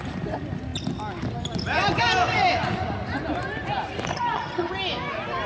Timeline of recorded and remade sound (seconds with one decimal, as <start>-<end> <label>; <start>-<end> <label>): 0.0-4.1 recorded; 4.1-4.7 remade; 4.7-5.5 recorded